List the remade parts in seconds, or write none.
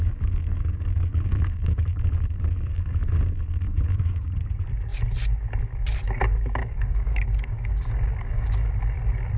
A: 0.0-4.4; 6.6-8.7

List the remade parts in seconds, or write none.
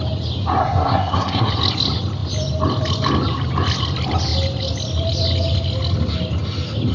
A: 0.6-1.5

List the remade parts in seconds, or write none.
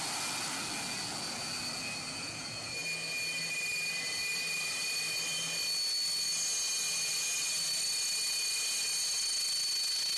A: none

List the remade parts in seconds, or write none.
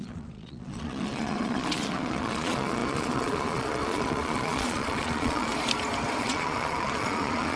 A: 0.0-5.5; 6.2-7.6